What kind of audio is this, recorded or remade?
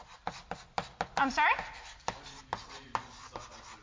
recorded